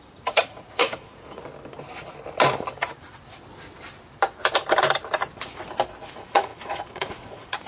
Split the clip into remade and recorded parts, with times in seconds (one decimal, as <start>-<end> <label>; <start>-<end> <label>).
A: 0.0-1.5 remade; 1.5-6.1 recorded; 6.1-7.7 remade